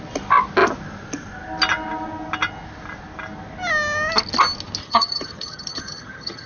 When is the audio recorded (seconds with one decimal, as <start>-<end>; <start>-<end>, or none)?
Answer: 0.0-4.8